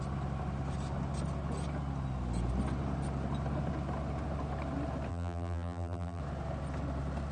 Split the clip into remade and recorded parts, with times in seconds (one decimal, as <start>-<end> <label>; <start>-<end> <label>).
0.0-5.1 recorded; 5.1-6.2 remade; 6.2-7.3 recorded